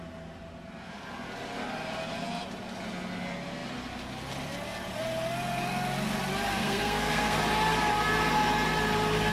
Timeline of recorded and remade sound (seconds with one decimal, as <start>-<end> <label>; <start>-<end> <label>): 0.0-6.5 recorded; 6.5-7.4 remade; 7.4-9.3 recorded

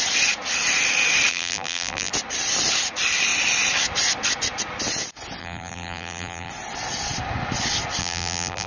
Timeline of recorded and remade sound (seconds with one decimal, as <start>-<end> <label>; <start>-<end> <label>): 0.0-1.3 recorded; 1.3-2.1 remade; 2.1-5.4 recorded; 5.4-6.5 remade; 6.5-8.0 recorded; 8.0-8.7 remade